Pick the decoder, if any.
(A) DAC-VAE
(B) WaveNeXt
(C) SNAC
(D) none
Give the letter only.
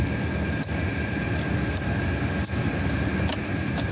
D